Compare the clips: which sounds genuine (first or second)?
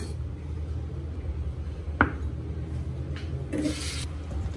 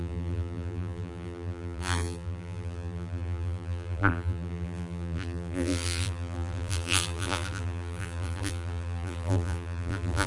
first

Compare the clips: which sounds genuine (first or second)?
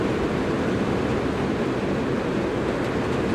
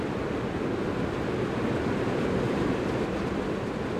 first